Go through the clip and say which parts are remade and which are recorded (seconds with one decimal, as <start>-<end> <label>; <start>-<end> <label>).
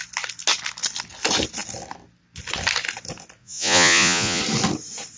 0.0-3.4 recorded; 3.4-4.4 remade; 4.4-5.2 recorded